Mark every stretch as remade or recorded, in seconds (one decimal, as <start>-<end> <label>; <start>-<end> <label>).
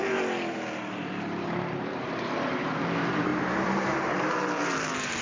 0.0-1.0 recorded; 1.0-5.2 remade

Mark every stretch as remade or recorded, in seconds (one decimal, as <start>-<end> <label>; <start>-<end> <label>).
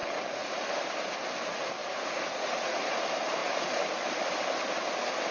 0.0-0.5 remade; 0.5-1.8 recorded; 1.8-3.0 remade; 3.0-5.3 recorded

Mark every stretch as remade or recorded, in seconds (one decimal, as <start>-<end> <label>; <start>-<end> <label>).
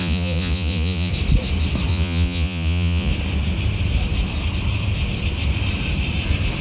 0.0-1.1 remade; 1.1-1.9 recorded; 1.9-3.1 remade; 3.1-6.6 recorded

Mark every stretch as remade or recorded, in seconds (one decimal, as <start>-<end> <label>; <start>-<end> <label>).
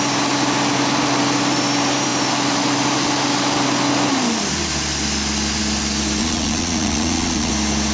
0.0-6.2 recorded; 6.2-7.5 remade; 7.5-7.9 recorded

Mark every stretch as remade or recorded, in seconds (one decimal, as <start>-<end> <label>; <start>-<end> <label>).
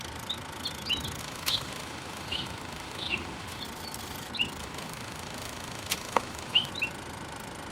0.0-1.2 recorded; 1.2-3.6 remade; 3.6-4.6 recorded; 4.6-6.7 remade; 6.7-7.7 recorded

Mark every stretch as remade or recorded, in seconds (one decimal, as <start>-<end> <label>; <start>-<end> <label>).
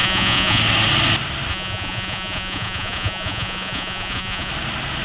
0.0-0.6 remade; 0.6-1.5 recorded; 1.5-4.5 remade; 4.5-5.0 recorded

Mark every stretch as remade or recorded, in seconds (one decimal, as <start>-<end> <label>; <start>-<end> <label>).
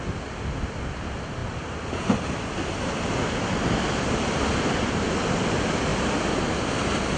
0.0-7.2 recorded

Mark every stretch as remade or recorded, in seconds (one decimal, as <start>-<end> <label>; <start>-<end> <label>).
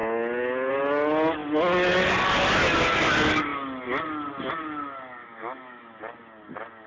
0.0-5.2 recorded; 5.2-6.0 remade; 6.0-6.9 recorded